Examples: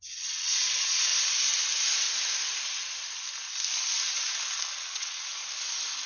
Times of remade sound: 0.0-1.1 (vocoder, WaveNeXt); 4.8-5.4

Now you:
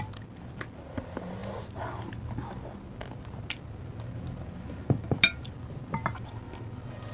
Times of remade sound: none

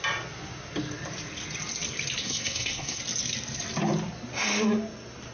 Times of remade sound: 2.2-3.0 (codec, SNAC)

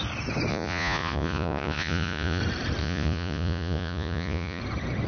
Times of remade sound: 0.5-2.4 (vocoder, Vocos); 2.8-4.6

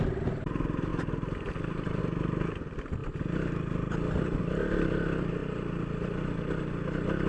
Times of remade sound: none

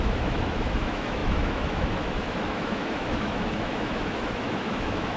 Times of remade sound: 0.0-5.2 (autoencoder, DAC-VAE)

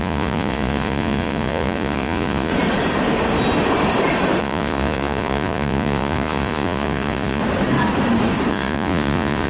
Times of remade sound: 0.0-2.5 (vocoder, Vocos); 4.4-7.4; 8.5-9.5

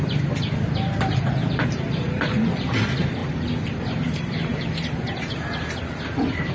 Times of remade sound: none